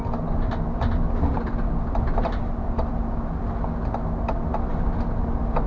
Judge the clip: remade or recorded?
recorded